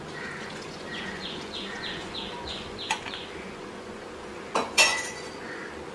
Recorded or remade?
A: remade